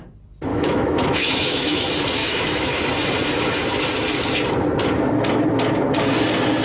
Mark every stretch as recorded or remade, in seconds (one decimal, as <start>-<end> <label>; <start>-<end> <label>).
0.0-0.5 recorded; 0.5-1.8 remade; 1.8-2.2 recorded; 2.2-2.8 remade; 2.8-6.6 recorded